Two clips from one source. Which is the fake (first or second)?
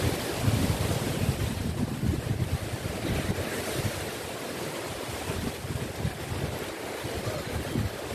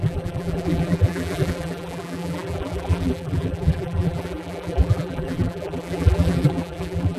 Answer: second